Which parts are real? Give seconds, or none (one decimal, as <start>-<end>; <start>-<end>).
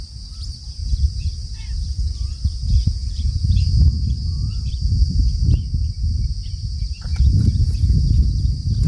0.0-0.8; 1.5-3.0; 3.9-4.3; 5.2-7.1; 7.7-8.9